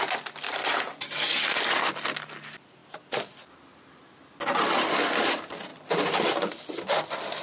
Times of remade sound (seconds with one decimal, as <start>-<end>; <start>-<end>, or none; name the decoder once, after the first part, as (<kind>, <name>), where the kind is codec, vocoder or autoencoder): none